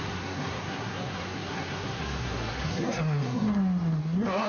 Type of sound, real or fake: fake